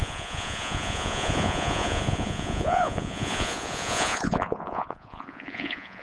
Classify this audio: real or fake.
fake